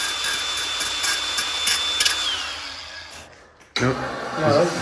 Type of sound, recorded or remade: recorded